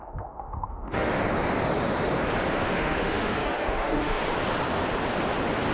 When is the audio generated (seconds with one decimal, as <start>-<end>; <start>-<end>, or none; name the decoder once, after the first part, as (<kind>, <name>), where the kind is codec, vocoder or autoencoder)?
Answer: 0.0-1.2 (autoencoder, DAC-VAE); 2.5-4.2